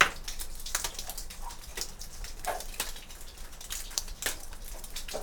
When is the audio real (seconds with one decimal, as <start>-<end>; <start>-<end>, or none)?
0.0-1.7; 4.8-5.2